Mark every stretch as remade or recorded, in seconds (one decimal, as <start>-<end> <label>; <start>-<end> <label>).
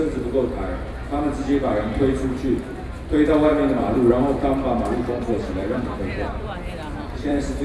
0.0-5.4 recorded; 5.4-7.6 remade